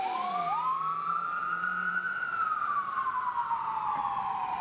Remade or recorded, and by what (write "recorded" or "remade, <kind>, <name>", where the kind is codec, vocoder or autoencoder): remade, vocoder, BigVGAN v2